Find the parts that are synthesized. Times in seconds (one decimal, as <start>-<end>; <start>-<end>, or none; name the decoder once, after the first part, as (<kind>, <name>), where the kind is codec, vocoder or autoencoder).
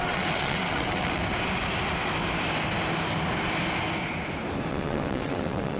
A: 0.0-1.2 (vocoder, WaveNeXt); 4.7-5.8